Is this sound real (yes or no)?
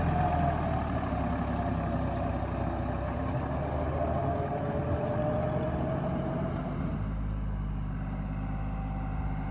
yes